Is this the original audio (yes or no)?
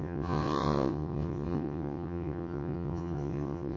no